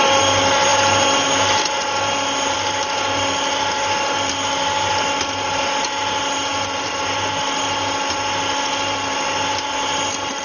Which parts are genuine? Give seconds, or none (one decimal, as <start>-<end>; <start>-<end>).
0.0-10.4